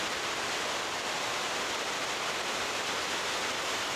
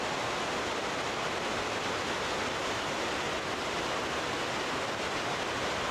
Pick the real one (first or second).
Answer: second